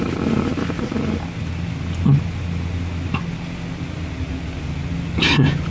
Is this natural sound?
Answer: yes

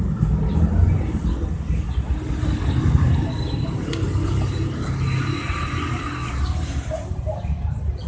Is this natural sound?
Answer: yes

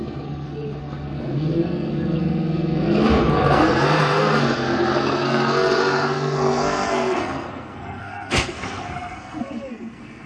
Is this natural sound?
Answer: no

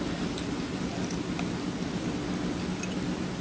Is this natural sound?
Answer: yes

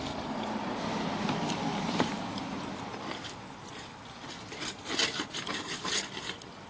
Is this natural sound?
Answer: yes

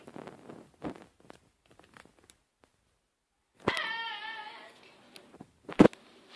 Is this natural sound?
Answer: yes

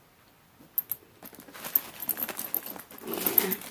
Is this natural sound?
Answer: yes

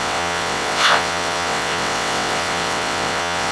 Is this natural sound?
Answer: no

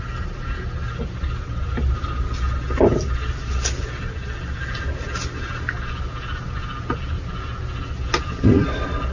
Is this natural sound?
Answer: yes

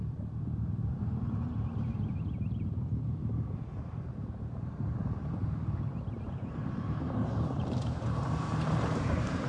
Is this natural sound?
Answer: no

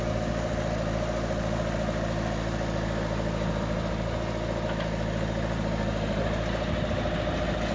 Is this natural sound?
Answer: yes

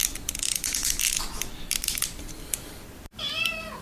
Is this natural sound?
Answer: yes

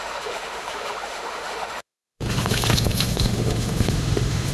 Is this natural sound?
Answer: no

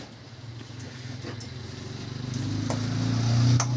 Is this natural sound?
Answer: yes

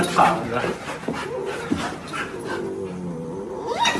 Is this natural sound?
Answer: yes